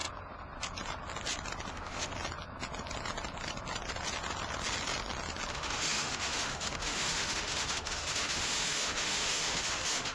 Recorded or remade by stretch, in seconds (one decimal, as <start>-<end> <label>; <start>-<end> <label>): 0.0-1.7 recorded; 1.7-2.1 remade; 2.1-5.5 recorded; 5.5-10.1 remade